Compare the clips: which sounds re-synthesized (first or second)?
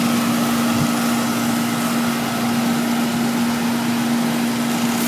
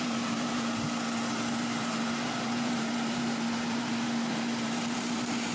second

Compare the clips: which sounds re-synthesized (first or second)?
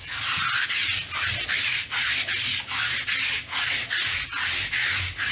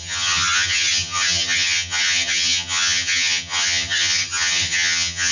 second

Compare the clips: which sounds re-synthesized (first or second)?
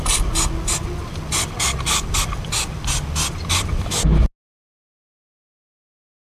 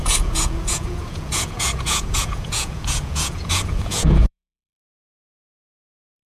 second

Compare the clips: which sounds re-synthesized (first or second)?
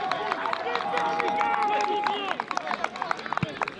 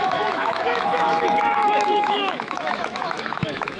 second